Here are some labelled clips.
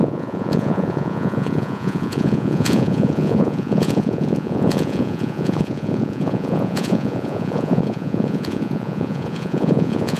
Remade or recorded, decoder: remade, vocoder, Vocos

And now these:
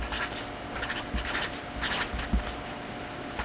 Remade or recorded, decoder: recorded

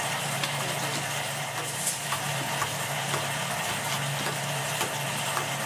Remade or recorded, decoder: recorded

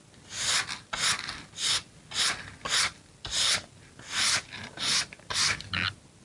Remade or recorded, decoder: recorded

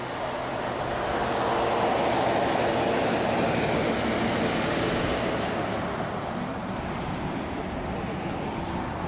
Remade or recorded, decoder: recorded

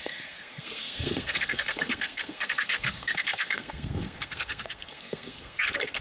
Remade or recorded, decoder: remade, codec, SNAC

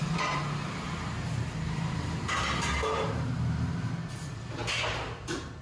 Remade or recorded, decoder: recorded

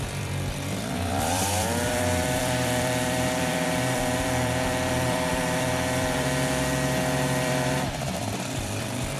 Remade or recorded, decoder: remade, vocoder, BigVGAN v2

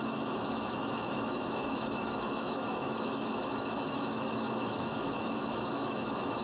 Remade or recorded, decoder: remade, autoencoder, DAC-VAE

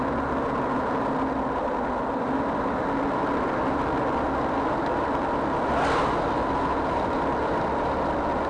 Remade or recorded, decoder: recorded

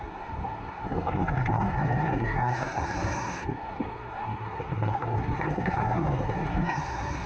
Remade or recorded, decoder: remade, codec, SNAC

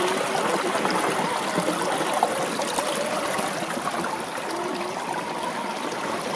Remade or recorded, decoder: recorded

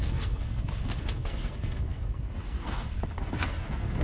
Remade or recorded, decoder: remade, codec, SNAC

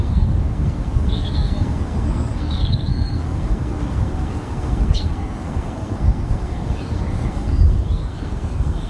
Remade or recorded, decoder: remade, codec, SNAC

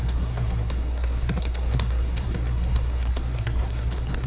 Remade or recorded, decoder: remade, codec, SNAC